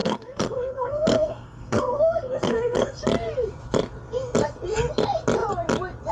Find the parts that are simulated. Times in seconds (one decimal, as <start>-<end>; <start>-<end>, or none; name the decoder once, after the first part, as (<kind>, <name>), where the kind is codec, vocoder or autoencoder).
0.0-3.0 (codec, SNAC)